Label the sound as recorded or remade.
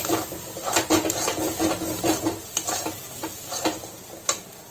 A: recorded